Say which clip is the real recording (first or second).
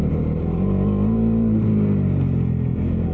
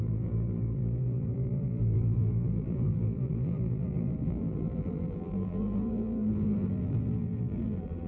first